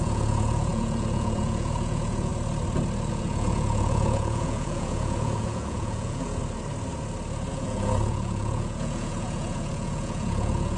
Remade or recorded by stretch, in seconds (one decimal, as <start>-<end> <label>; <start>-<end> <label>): 0.0-2.3 remade; 2.3-3.1 recorded; 3.1-6.4 remade; 6.4-7.5 recorded; 7.5-10.8 remade